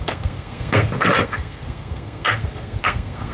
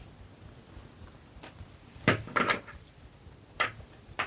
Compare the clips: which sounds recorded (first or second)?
second